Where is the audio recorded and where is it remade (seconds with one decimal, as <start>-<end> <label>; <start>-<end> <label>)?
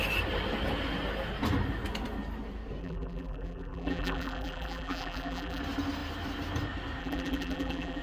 0.0-2.8 recorded; 2.8-5.6 remade; 5.6-7.0 recorded; 7.0-8.0 remade